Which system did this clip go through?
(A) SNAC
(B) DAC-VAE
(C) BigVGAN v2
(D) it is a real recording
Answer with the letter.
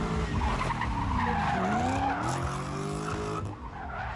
D